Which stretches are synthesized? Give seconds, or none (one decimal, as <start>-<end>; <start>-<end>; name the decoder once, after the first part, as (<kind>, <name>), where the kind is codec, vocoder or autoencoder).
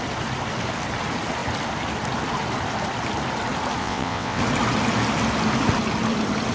3.8-4.4 (vocoder, WaveNeXt)